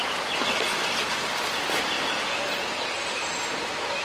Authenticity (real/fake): real